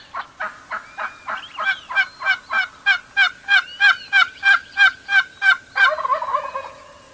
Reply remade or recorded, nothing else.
recorded